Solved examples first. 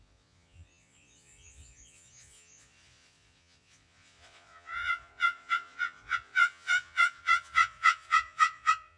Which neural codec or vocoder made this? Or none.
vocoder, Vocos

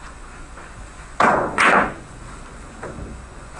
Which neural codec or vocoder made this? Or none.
vocoder, Vocos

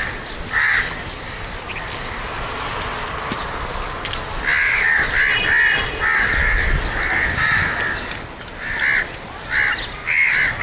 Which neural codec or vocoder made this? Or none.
none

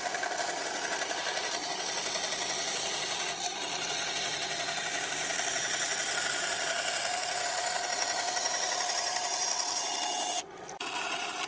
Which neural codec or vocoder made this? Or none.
none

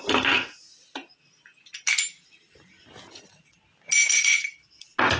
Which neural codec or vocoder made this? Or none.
none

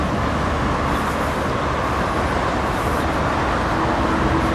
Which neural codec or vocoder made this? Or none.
none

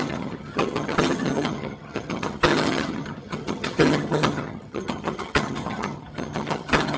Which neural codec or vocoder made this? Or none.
vocoder, HiFi-GAN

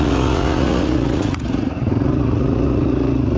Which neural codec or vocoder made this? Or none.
vocoder, Vocos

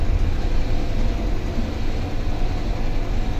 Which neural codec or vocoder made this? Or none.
none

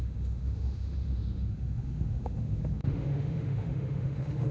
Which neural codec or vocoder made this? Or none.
autoencoder, DAC-VAE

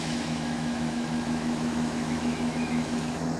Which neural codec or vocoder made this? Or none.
autoencoder, DAC-VAE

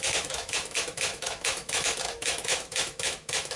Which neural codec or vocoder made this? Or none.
autoencoder, DAC-VAE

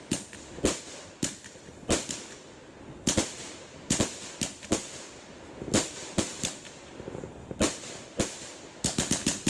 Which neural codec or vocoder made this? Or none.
none